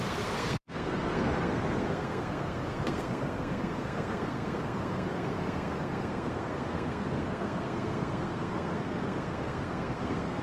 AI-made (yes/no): yes